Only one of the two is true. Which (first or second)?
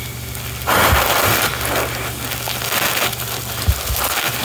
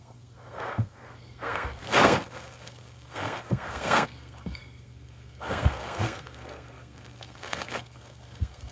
first